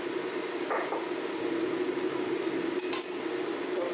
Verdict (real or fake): real